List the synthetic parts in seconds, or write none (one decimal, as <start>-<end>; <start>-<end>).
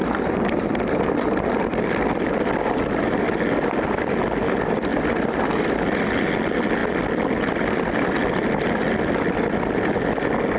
0.0-3.0; 4.9-6.3